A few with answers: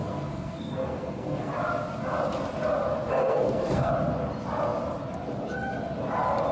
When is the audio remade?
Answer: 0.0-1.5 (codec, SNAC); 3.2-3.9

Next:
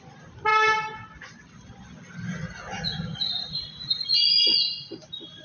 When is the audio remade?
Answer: none

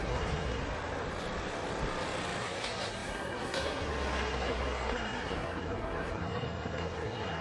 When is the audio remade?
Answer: 0.0-0.6 (codec, SNAC); 2.4-7.4

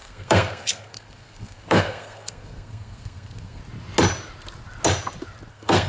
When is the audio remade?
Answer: 0.0-3.6 (codec, SNAC); 5.5-5.9